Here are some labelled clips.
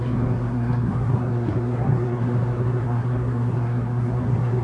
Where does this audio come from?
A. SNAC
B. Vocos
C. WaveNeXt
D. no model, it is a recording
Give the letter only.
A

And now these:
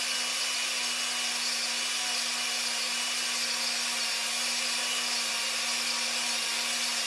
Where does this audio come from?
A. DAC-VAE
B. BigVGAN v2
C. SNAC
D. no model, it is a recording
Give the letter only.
D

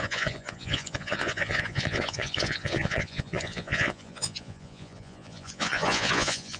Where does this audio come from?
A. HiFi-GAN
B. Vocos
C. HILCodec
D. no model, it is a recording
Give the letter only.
B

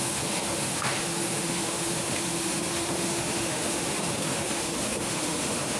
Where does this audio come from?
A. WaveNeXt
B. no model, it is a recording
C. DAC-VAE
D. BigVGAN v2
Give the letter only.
C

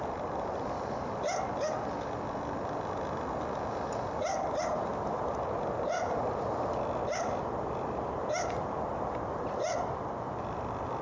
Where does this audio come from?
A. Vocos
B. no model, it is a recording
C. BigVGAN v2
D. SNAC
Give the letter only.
B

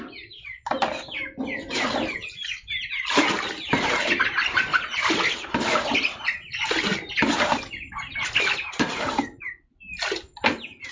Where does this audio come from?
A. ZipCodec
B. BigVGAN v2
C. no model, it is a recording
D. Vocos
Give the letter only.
C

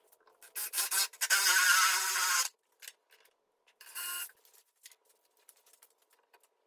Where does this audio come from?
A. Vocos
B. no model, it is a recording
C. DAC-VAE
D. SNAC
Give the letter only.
B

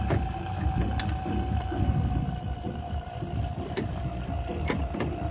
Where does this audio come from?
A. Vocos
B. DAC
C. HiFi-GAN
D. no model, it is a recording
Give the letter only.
D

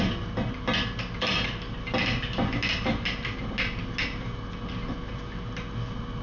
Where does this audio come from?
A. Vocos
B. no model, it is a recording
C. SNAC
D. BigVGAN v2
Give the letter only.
B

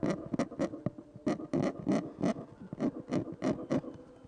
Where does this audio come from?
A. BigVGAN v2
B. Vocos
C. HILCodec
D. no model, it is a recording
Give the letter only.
D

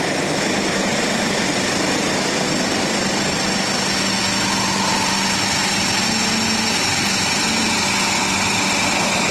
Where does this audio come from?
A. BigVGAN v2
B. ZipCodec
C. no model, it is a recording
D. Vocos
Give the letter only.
C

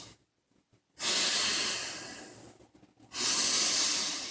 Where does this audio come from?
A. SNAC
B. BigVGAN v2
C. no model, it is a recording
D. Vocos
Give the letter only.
C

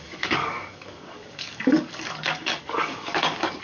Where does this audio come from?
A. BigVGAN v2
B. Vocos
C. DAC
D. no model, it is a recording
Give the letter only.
C